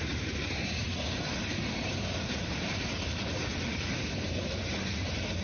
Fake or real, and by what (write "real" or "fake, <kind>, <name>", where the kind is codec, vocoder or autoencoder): fake, vocoder, BigVGAN v2